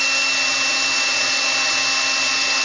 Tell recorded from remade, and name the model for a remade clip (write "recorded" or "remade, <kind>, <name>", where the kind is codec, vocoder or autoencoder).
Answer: recorded